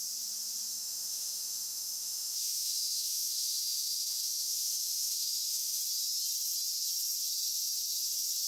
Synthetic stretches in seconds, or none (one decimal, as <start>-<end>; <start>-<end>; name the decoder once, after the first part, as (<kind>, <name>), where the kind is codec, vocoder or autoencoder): 0.7-5.8 (autoencoder, DAC-VAE)